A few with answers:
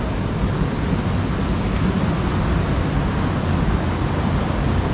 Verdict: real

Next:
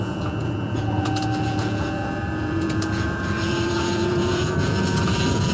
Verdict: fake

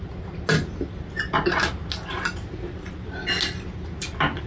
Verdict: real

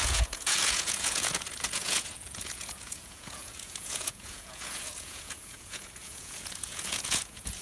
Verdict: fake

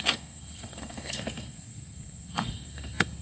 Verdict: fake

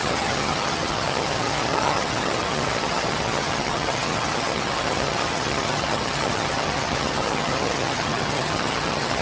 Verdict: fake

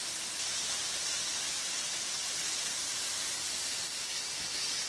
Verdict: real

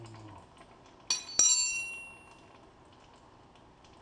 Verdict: real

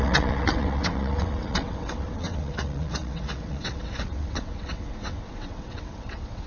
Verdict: fake